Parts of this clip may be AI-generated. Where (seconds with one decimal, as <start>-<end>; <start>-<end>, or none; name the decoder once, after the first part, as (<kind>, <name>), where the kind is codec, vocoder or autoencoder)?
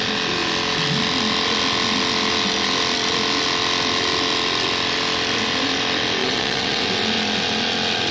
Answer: 6.2-6.9 (vocoder, WaveNeXt)